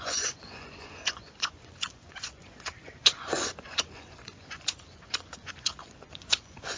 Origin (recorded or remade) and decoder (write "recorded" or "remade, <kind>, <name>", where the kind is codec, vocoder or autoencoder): remade, vocoder, Vocos